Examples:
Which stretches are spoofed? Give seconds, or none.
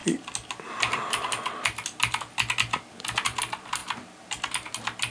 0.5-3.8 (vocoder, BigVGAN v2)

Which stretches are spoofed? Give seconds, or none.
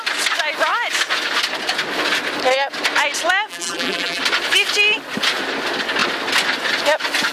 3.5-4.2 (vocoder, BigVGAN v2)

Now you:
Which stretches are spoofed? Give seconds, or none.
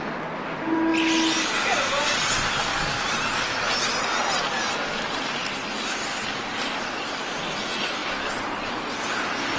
none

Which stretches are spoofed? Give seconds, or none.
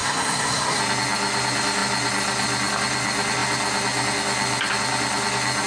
0.0-0.8 (codec, SNAC)